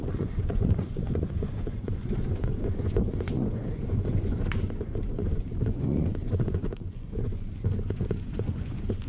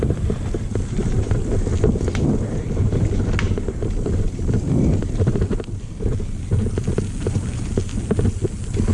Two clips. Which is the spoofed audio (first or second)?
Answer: first